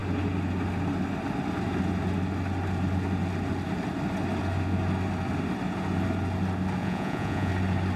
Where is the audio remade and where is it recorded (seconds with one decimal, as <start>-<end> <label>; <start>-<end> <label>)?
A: 0.0-6.8 recorded; 6.8-7.5 remade; 7.5-8.0 recorded